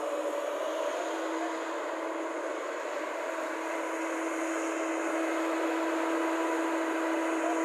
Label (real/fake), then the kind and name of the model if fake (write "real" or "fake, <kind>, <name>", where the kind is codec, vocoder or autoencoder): real